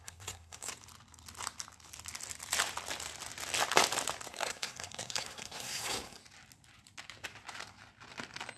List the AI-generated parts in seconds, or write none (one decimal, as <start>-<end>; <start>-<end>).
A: 0.0-0.7; 4.3-6.2